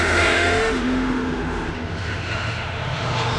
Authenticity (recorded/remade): remade